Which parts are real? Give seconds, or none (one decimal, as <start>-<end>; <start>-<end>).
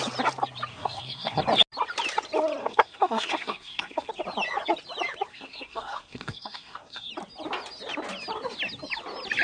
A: 0.0-0.7; 1.4-2.6; 4.1-5.3; 7.1-9.4